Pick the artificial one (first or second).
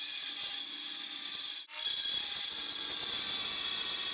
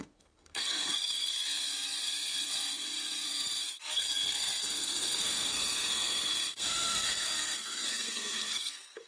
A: second